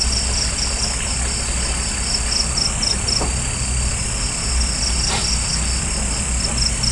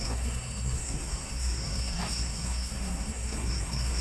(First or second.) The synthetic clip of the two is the second